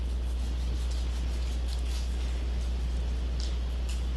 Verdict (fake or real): real